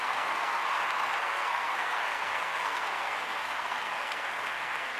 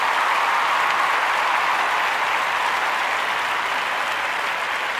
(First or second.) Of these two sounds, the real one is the second